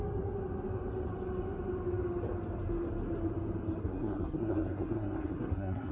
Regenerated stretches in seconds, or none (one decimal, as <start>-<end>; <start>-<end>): 3.8-5.9